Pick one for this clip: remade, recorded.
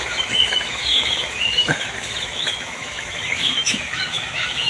remade